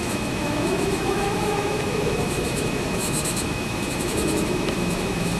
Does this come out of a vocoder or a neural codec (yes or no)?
yes